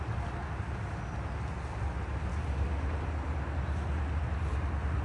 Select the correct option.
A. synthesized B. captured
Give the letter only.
B